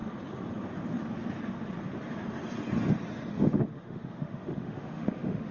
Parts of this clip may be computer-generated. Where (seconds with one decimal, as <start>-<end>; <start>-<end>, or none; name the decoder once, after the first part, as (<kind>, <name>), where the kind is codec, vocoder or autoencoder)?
3.3-5.5 (autoencoder, DAC-VAE)